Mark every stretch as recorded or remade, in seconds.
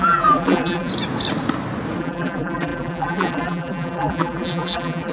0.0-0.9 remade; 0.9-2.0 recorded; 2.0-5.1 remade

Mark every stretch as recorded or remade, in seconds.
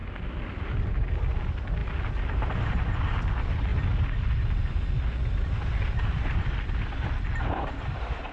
0.0-8.3 recorded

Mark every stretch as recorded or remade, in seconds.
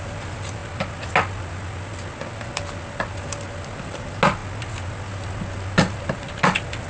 0.0-6.9 recorded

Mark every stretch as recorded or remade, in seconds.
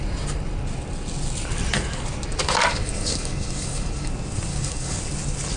0.0-2.7 recorded; 2.7-4.1 remade; 4.1-4.5 recorded; 4.5-5.0 remade; 5.0-5.6 recorded